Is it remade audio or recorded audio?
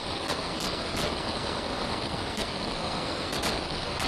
remade